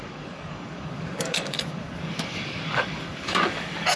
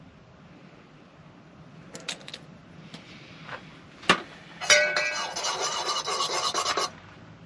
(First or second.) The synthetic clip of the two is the first